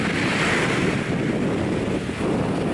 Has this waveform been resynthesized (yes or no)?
no